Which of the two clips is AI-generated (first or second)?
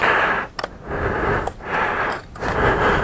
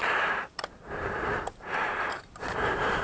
second